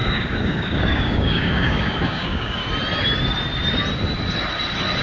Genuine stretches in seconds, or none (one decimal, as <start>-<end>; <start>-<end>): 2.6-5.0